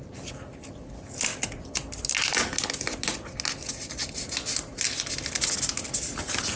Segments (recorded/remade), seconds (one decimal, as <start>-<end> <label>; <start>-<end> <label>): 0.0-6.6 recorded